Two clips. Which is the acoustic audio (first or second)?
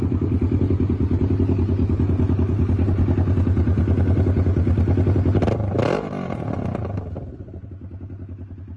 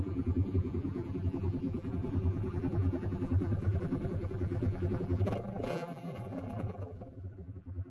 first